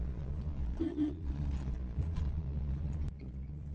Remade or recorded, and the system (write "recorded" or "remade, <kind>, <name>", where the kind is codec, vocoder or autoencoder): remade, vocoder, Vocos